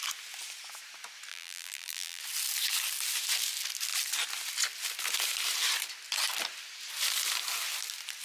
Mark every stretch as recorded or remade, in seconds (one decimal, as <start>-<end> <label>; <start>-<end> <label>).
0.0-1.3 recorded; 1.3-2.2 remade; 2.2-8.2 recorded

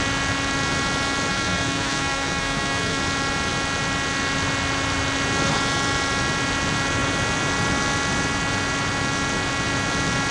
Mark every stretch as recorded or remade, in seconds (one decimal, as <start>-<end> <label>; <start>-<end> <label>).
0.0-1.3 recorded; 1.3-3.0 remade; 3.0-10.3 recorded

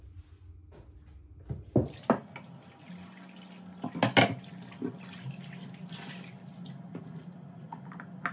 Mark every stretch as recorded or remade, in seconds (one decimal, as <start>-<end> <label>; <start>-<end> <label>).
0.0-6.9 recorded; 6.9-7.8 remade; 7.8-8.3 recorded

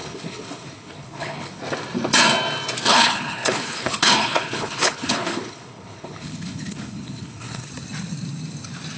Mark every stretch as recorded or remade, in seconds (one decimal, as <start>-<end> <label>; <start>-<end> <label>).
0.0-1.6 remade; 1.6-2.9 recorded; 2.9-7.7 remade; 7.7-9.0 recorded

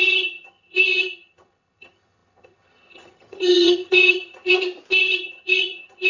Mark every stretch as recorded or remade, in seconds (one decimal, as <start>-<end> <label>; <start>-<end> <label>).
0.0-4.5 remade; 4.5-5.0 recorded; 5.0-6.1 remade

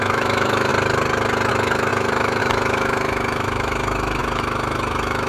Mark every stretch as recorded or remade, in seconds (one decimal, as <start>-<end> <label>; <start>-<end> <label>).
0.0-0.7 remade; 0.7-1.5 recorded; 1.5-5.3 remade